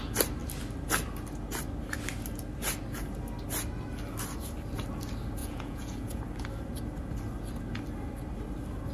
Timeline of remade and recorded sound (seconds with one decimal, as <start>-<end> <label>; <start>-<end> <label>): 0.0-5.4 recorded; 5.4-6.2 remade; 6.2-8.9 recorded